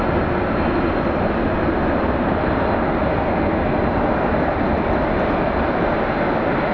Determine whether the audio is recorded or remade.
recorded